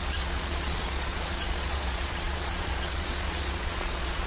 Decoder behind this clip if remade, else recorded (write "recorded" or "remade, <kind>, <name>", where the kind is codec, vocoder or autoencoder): remade, vocoder, Vocos